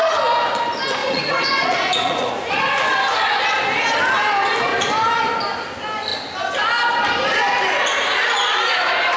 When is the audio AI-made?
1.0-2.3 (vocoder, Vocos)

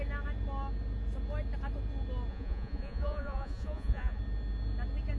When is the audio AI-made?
2.3-4.2 (vocoder, Vocos)